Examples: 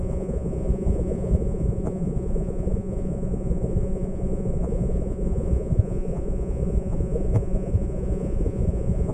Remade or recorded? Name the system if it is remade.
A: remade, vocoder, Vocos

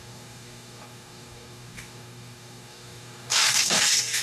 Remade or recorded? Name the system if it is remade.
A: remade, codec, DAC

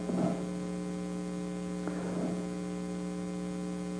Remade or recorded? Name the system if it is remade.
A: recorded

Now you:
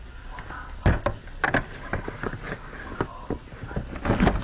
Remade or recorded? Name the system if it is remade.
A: recorded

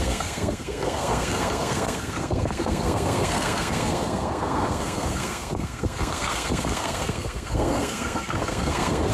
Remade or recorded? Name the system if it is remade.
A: remade, codec, SNAC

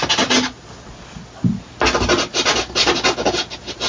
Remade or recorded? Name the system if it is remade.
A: recorded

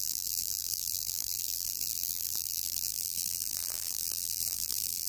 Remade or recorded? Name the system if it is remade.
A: remade, vocoder, BigVGAN v2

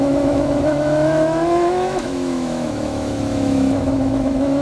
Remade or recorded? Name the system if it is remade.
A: remade, autoencoder, DAC-VAE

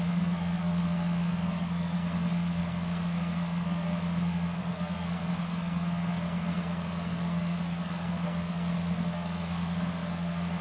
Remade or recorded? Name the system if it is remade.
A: remade, codec, SNAC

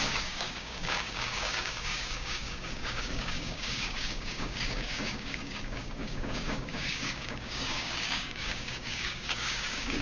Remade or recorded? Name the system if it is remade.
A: remade, codec, DAC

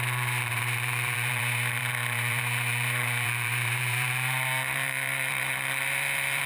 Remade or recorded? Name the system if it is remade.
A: remade, vocoder, BigVGAN v2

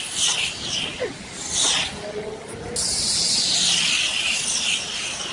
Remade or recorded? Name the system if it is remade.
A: recorded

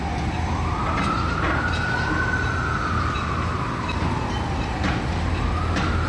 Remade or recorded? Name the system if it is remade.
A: recorded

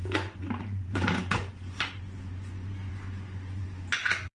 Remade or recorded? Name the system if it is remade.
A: remade, vocoder, Vocos